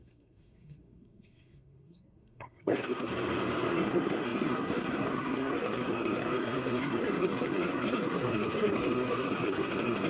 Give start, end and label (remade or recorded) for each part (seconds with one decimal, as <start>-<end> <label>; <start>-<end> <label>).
0.0-3.1 remade; 3.1-3.7 recorded; 3.7-10.1 remade